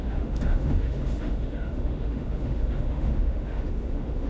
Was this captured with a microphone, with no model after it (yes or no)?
no